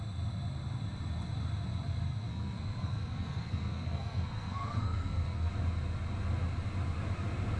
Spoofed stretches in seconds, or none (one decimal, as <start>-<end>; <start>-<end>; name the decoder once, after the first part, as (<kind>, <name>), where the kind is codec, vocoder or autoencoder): 2.3-5.5 (codec, SNAC)